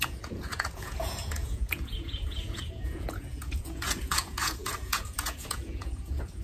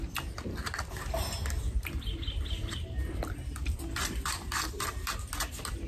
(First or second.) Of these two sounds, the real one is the second